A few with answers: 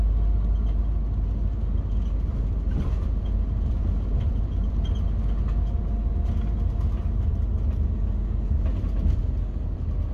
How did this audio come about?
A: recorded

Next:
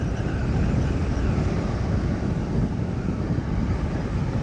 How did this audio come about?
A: recorded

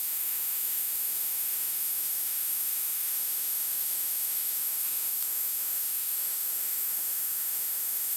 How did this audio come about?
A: remade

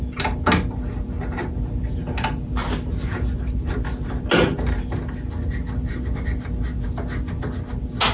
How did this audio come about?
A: recorded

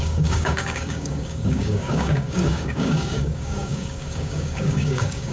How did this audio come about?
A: remade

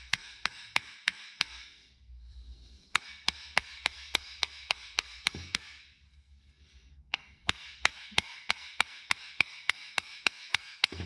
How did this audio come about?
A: remade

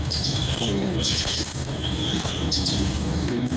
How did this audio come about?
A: remade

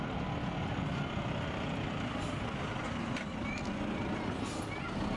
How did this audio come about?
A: recorded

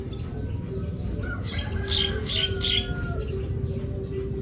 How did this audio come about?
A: recorded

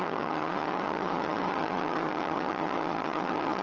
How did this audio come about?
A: remade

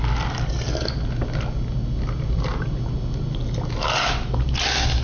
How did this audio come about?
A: recorded